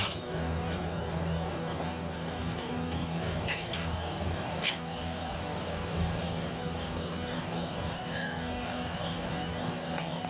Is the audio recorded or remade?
remade